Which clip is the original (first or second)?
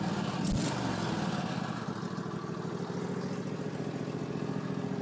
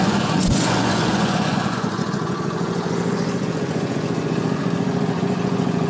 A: first